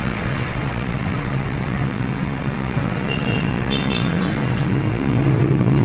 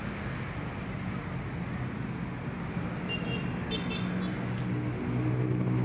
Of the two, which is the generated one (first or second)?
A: first